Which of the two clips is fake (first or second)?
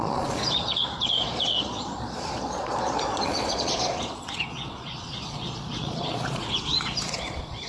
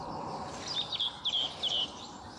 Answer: first